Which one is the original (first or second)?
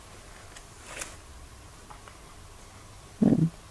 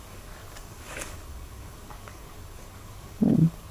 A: first